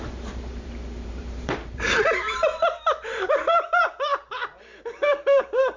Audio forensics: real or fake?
fake